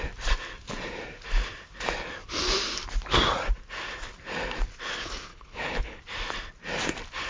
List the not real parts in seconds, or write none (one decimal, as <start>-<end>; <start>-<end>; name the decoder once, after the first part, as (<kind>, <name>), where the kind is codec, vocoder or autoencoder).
5.3-6.0 (codec, HILCodec)